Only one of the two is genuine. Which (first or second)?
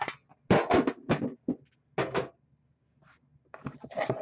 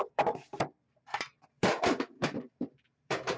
first